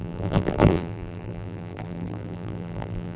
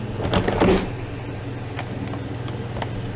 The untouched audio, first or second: second